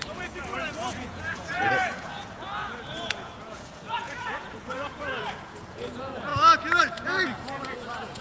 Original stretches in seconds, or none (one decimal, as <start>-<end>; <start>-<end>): 6.3-6.8